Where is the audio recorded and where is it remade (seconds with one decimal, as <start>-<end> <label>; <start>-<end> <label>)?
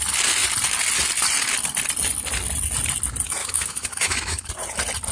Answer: 0.0-3.4 recorded; 3.4-4.5 remade; 4.5-5.1 recorded